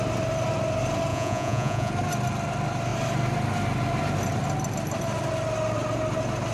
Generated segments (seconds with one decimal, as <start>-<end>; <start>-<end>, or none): 1.1-1.9

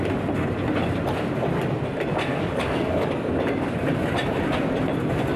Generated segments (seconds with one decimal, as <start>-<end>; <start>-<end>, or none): 2.3-3.3

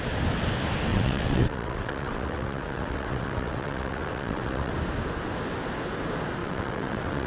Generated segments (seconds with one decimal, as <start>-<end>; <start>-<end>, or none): 0.9-4.7; 6.4-7.3

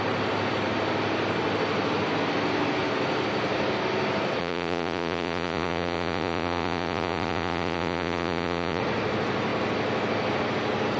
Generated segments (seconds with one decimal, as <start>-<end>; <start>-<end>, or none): 4.4-8.8